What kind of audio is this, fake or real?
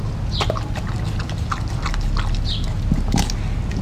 real